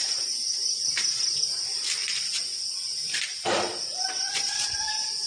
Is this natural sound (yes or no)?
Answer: no